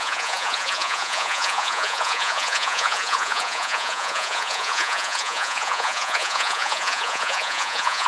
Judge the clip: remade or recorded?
remade